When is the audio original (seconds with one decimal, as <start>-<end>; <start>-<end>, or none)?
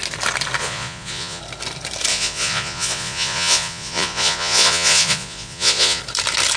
0.0-0.6; 1.4-2.1; 6.0-6.6